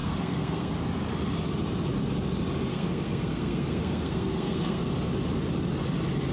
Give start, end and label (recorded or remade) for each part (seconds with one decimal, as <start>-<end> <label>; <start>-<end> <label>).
0.0-0.7 remade; 0.7-2.7 recorded; 2.7-4.9 remade; 4.9-6.3 recorded